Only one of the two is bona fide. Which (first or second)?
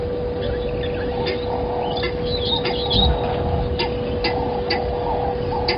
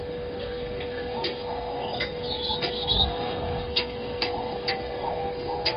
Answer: first